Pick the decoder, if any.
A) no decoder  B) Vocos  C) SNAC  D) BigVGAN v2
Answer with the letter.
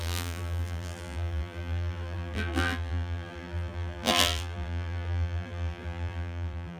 D